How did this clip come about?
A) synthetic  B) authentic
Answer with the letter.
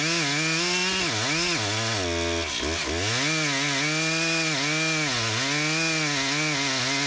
B